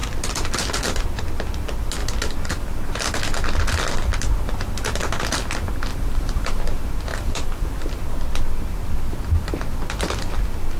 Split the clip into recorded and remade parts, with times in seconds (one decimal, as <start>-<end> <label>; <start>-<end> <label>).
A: 0.0-5.9 recorded; 5.9-6.6 remade; 6.6-7.1 recorded; 7.1-8.0 remade; 8.0-10.8 recorded